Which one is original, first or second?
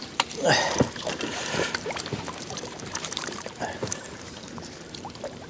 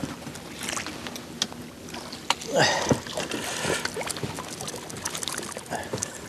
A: second